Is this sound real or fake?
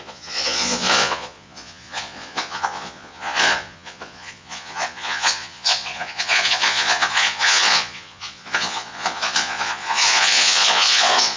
fake